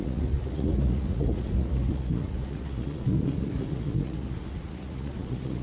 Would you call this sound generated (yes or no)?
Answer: yes